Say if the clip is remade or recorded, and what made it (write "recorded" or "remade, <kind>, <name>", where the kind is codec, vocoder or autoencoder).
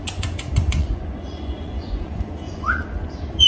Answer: remade, vocoder, Vocos